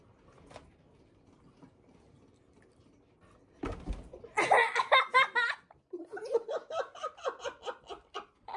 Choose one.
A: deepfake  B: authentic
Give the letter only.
B